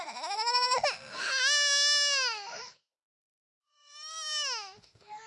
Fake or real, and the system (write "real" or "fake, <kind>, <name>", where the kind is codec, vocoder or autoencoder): fake, autoencoder, DAC-VAE